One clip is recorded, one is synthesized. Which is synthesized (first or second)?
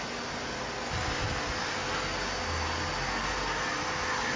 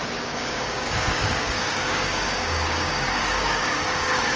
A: second